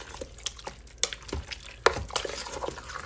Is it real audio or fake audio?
real